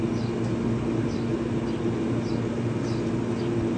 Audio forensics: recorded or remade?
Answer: recorded